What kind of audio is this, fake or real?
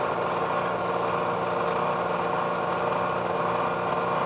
real